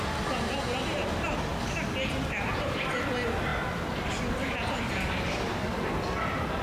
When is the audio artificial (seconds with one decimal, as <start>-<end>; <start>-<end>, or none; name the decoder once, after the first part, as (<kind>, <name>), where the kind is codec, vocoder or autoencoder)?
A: none